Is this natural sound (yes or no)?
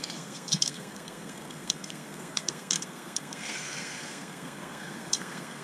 no